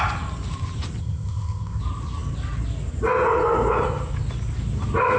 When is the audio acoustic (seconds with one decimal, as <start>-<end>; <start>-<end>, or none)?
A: 0.0-1.0; 1.8-5.2